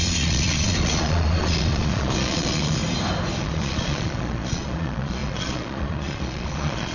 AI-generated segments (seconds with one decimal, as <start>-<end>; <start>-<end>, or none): 0.0-2.8; 3.4-6.9